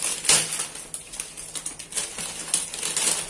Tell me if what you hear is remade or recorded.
recorded